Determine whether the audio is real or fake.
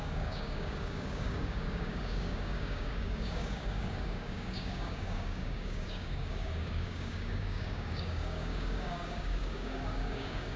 fake